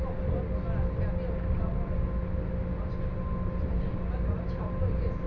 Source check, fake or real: real